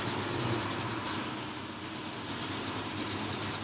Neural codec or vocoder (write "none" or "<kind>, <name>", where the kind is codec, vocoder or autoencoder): none